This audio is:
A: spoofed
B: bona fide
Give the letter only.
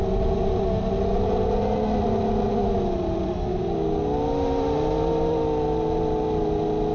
B